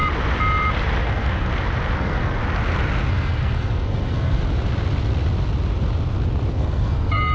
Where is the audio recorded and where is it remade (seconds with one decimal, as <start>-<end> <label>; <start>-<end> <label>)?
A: 0.0-1.0 recorded; 1.0-1.5 remade; 1.5-2.0 recorded; 2.0-2.4 remade; 2.4-3.1 recorded; 3.1-4.4 remade; 4.4-6.5 recorded; 6.5-7.3 remade